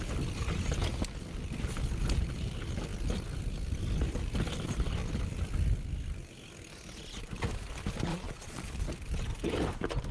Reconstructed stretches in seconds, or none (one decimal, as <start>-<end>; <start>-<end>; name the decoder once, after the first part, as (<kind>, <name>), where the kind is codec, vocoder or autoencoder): 8.1-8.8 (vocoder, Vocos)